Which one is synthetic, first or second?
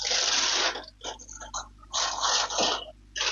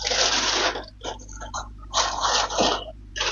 second